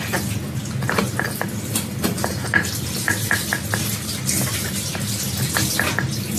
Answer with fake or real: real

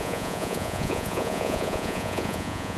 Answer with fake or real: fake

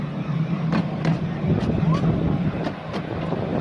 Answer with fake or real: real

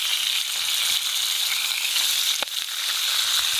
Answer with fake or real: real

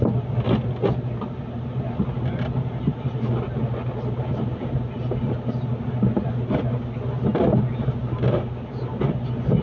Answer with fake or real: real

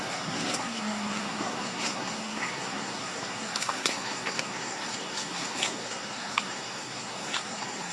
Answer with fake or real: fake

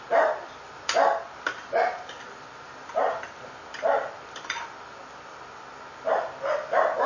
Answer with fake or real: real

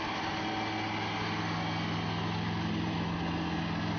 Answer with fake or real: real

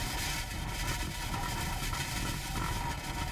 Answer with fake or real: real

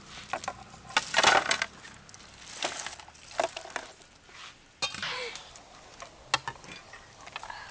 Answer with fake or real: real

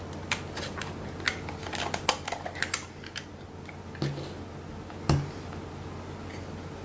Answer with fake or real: real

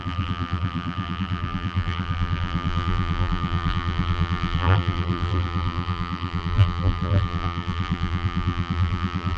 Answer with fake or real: fake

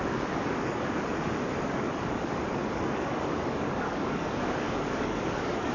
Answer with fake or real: fake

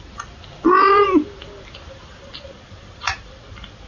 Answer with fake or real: real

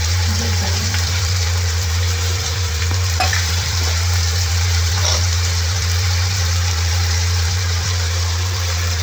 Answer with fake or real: fake